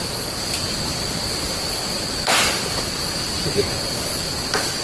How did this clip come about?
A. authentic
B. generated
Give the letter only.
A